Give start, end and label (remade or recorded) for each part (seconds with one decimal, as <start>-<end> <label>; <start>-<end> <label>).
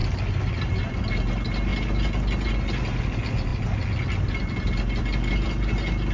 0.0-6.1 recorded